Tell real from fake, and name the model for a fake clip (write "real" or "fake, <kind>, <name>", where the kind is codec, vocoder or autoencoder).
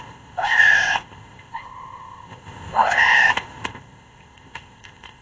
fake, codec, ZipCodec